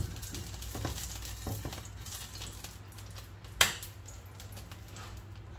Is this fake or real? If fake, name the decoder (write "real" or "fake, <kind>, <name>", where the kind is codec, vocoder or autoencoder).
real